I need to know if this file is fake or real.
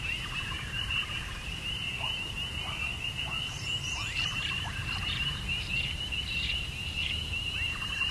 fake